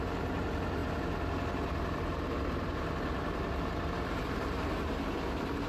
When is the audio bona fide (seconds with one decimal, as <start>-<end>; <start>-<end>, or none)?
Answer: none